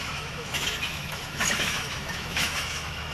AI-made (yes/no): yes